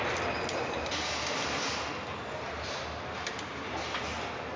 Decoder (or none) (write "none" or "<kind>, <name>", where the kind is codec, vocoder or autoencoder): none